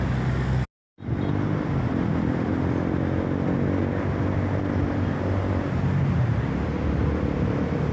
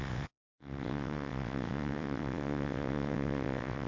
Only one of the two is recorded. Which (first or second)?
first